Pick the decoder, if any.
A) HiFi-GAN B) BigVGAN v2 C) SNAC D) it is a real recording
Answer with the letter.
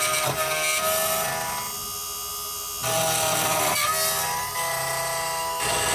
D